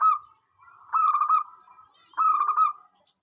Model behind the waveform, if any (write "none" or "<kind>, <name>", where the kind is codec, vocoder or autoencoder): none